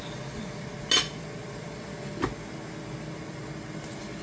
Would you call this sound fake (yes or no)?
no